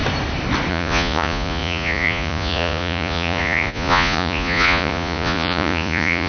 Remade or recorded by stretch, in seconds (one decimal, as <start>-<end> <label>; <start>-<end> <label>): 0.0-0.7 recorded; 0.7-6.3 remade